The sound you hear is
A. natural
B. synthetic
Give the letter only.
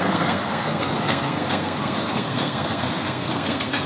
B